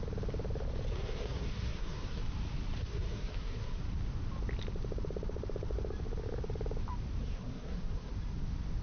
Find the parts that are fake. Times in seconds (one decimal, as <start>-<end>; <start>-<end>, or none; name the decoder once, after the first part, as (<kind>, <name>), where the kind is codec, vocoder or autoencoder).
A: 0.9-2.2 (codec, SNAC); 2.8-3.8; 7.2-8.1